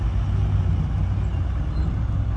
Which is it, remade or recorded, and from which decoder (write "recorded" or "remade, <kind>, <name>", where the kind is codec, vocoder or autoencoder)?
recorded